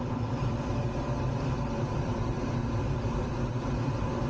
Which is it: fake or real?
fake